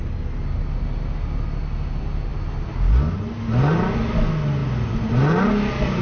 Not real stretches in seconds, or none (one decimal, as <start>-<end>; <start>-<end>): none